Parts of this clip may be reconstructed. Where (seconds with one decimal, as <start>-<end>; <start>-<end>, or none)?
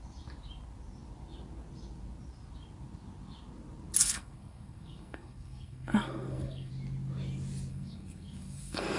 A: 4.0-6.7; 7.7-9.0